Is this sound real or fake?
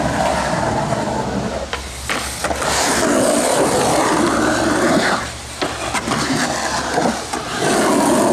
real